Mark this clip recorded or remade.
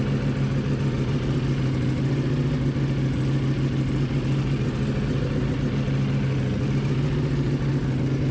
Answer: recorded